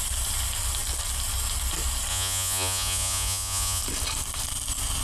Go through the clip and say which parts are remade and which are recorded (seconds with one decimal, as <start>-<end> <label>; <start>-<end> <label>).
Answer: 0.0-2.1 recorded; 2.1-3.8 remade; 3.8-5.0 recorded